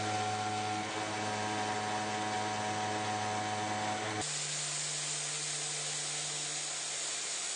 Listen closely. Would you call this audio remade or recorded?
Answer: recorded